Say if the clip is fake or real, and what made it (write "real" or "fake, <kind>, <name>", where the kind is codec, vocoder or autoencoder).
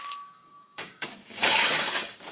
fake, codec, DAC